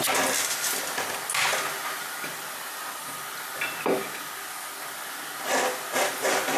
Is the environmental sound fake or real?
real